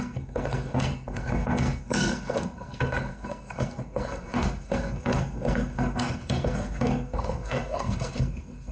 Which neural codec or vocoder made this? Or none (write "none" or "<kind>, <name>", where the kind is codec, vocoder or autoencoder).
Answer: codec, SNAC